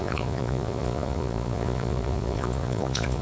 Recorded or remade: remade